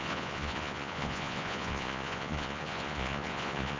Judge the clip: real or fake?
fake